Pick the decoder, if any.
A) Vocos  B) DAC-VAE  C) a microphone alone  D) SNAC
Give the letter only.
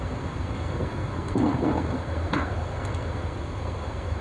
D